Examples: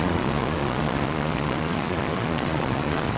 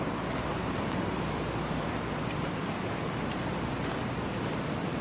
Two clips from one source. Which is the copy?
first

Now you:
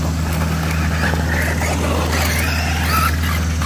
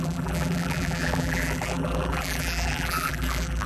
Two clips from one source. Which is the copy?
second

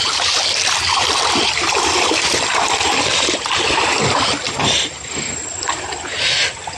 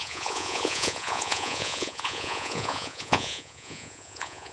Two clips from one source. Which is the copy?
second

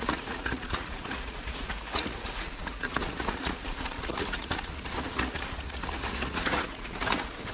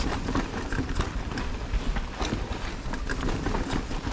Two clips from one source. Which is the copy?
first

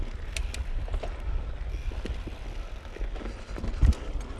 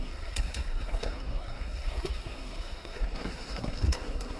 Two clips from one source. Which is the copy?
second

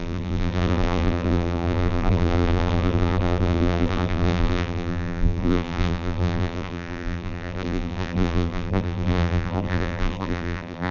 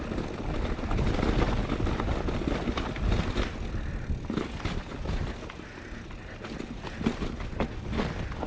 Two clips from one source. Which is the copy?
first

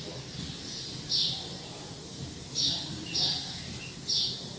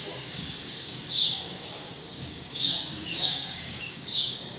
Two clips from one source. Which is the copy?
second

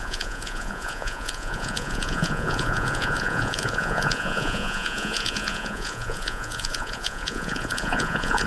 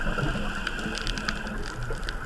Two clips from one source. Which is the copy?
first